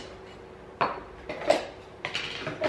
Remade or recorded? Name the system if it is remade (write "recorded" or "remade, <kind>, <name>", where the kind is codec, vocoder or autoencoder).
recorded